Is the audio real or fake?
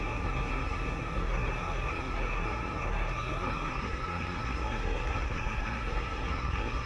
fake